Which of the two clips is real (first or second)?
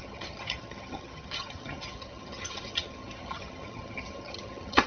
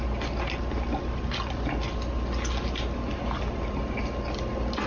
second